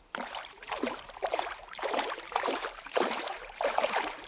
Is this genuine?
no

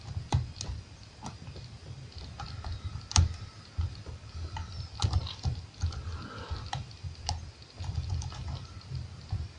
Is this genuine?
yes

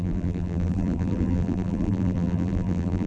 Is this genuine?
no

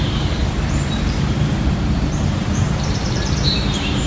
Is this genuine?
no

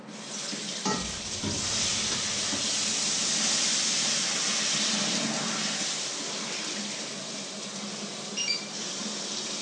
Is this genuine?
yes